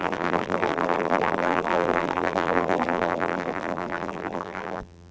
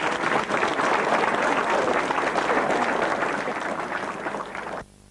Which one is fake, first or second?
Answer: first